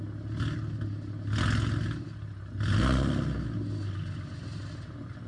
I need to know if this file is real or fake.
real